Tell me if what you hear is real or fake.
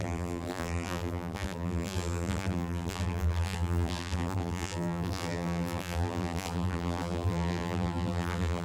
fake